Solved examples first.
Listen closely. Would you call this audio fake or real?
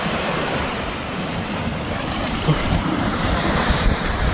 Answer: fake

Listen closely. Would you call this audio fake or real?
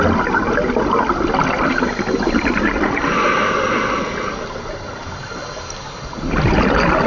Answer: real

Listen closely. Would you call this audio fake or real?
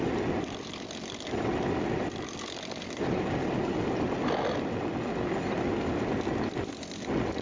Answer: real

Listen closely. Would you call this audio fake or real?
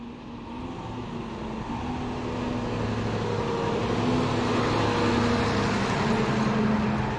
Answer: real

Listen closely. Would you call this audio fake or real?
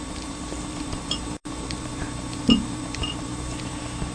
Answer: fake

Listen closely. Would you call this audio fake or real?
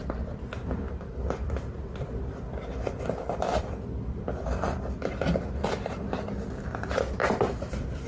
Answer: fake